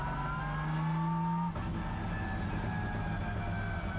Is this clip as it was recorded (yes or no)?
yes